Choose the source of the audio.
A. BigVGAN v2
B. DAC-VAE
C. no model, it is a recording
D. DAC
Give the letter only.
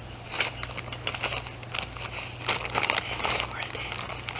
C